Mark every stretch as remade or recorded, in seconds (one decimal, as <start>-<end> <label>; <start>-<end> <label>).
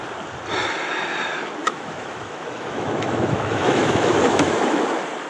0.0-1.6 recorded; 1.6-4.8 remade; 4.8-5.3 recorded